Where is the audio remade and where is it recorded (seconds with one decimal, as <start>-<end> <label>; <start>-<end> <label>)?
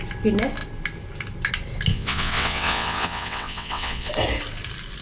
0.0-1.9 recorded; 1.9-4.1 remade; 4.1-5.0 recorded